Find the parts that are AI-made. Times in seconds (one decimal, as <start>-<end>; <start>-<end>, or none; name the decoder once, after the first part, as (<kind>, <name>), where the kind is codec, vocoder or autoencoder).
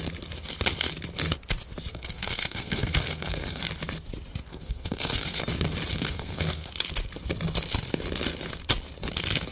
1.9-3.6 (codec, SNAC); 4.5-5.4; 5.9-6.7